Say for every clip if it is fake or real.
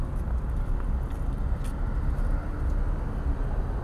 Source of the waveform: real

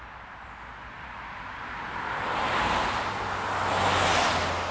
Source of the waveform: real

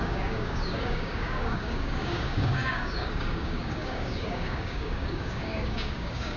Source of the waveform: fake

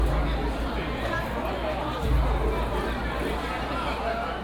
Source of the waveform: real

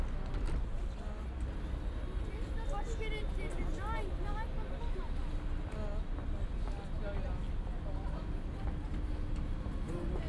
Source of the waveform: real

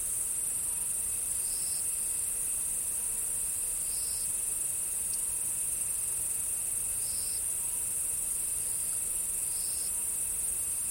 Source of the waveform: real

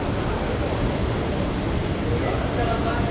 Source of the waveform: real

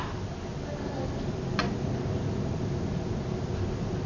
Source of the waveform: real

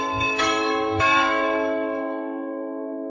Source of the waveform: fake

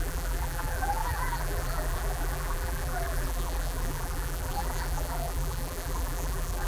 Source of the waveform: fake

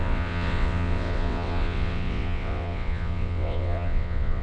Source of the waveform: fake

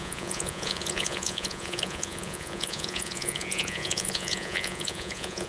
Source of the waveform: fake